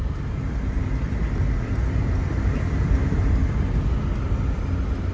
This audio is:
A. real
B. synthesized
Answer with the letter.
A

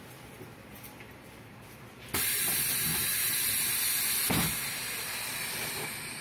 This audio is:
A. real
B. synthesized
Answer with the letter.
A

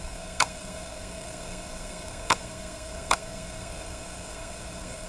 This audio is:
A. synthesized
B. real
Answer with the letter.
A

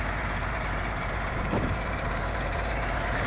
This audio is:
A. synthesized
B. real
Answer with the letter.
A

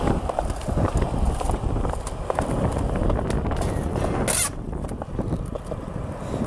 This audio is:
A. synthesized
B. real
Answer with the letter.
B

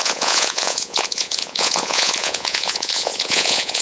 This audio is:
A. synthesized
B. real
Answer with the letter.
A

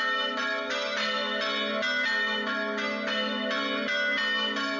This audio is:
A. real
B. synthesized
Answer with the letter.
A